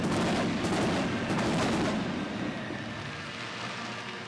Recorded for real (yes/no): yes